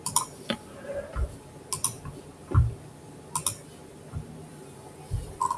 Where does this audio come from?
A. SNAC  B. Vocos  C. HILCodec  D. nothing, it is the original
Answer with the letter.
D